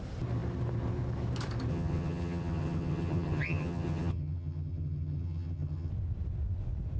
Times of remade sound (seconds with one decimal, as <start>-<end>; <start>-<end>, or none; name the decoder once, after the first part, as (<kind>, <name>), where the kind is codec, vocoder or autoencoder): 1.7-5.9 (vocoder, HiFi-GAN)